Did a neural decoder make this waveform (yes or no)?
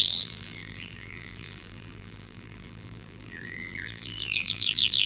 yes